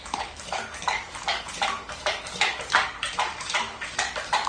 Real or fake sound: fake